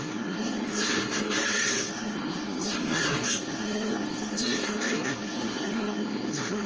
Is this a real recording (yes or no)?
no